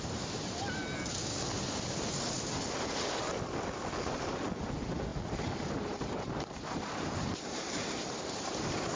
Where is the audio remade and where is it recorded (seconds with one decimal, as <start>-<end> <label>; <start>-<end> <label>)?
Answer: 0.0-0.8 remade; 0.8-4.6 recorded; 4.6-5.1 remade; 5.1-5.7 recorded; 5.7-9.0 remade